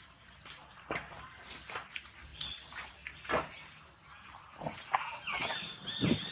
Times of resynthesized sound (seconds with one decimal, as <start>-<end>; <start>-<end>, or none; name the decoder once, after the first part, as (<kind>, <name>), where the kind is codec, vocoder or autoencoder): none